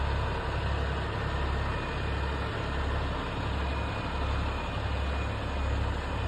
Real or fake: real